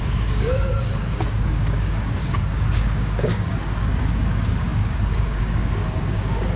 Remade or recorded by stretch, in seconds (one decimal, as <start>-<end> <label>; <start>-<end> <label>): 0.0-6.6 remade